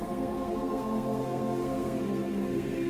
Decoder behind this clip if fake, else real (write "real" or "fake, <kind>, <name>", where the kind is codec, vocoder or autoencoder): fake, codec, SNAC